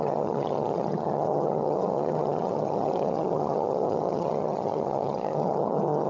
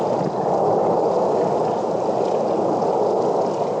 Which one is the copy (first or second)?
first